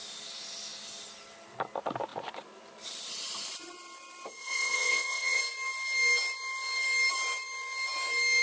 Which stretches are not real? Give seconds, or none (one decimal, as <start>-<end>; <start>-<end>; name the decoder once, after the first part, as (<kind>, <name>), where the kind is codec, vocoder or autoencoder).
4.4-5.4 (vocoder, WaveNeXt)